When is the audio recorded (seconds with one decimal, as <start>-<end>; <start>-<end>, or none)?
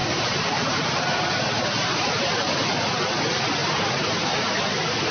2.3-3.6; 4.6-5.1